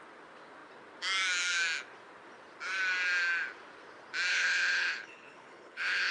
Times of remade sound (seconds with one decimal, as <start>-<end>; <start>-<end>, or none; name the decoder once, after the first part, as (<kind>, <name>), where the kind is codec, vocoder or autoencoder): 4.3-6.1 (codec, HILCodec)

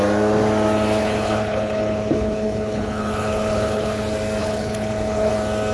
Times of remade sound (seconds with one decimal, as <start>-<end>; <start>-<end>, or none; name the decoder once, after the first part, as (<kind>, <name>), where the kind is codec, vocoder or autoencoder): 1.0-4.0 (codec, HILCodec); 4.4-5.3

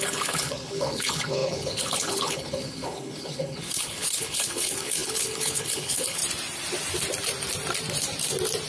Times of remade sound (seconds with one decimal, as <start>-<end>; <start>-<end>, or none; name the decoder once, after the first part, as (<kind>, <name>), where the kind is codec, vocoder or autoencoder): 0.0-6.2 (codec, HILCodec)

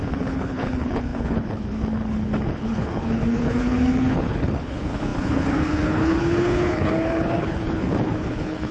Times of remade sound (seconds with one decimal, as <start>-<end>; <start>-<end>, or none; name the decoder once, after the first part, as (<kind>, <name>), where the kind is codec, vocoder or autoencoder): 0.0-8.7 (codec, HILCodec)

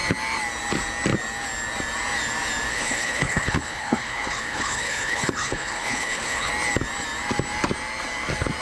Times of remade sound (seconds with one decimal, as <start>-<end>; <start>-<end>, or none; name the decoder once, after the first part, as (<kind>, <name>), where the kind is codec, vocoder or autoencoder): 2.7-6.5 (codec, HILCodec)

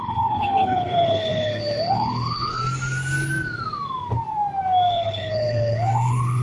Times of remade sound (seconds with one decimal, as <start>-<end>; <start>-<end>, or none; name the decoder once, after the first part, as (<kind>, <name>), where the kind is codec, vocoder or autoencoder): 0.0-2.6 (codec, HILCodec); 4.9-6.4

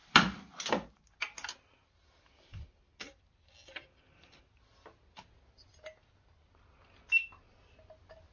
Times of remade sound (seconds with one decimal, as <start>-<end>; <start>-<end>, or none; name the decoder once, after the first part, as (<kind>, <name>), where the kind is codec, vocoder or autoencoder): none